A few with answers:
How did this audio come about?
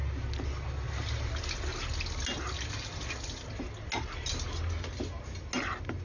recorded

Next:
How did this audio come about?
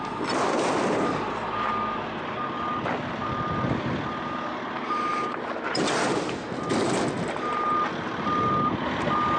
recorded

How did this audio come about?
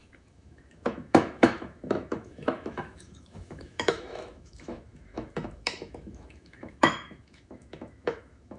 remade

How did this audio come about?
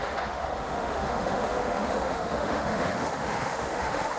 remade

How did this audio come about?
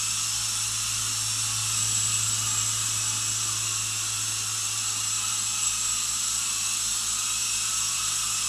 recorded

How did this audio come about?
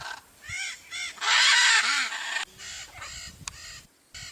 recorded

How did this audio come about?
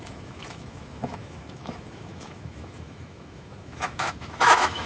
remade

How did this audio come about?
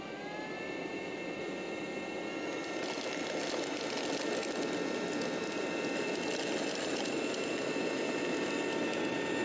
recorded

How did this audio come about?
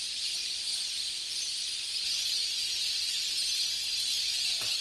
recorded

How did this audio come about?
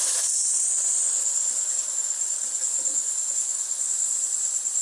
recorded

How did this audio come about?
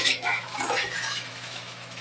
remade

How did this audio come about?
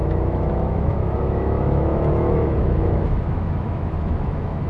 remade